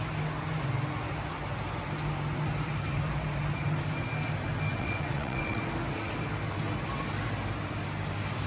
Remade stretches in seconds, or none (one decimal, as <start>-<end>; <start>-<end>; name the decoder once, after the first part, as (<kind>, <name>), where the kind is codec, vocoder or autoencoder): 4.7-5.6 (vocoder, WaveNeXt)